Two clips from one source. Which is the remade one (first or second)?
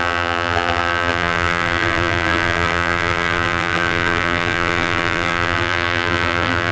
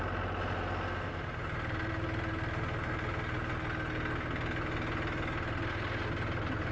first